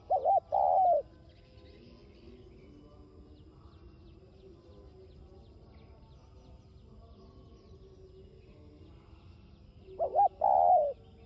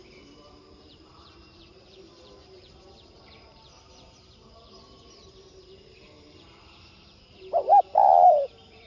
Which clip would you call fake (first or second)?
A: second